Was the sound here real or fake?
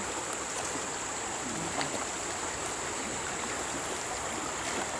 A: real